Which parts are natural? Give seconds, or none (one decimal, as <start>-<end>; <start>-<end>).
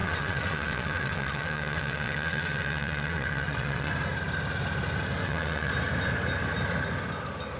3.9-5.2; 5.7-7.6